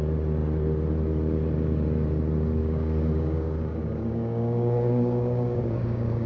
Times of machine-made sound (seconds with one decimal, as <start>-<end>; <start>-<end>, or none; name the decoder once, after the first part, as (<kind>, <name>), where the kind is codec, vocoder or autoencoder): 2.6-6.3 (codec, DAC)

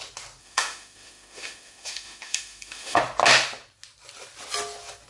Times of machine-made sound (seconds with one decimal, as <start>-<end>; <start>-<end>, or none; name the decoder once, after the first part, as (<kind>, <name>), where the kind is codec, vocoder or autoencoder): 0.4-3.0 (autoencoder, DAC-VAE)

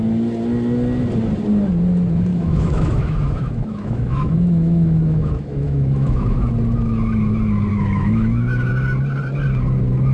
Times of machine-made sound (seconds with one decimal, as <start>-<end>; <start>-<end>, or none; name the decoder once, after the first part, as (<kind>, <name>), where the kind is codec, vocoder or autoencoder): 2.3-6.5 (autoencoder, DAC-VAE); 7.7-8.7

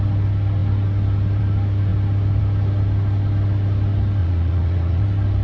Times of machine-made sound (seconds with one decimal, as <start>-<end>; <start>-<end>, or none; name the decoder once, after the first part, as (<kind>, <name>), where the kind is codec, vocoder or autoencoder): 4.2-5.0 (vocoder, Vocos)